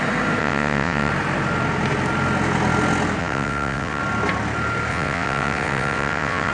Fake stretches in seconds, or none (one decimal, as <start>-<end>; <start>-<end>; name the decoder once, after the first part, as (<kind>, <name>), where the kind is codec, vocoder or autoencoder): 0.4-1.1 (vocoder, WaveNeXt); 3.2-4.0; 4.9-6.5